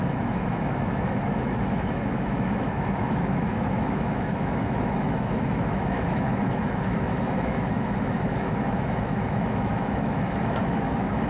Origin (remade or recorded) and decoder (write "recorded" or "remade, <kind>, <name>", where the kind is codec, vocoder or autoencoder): remade, autoencoder, DAC-VAE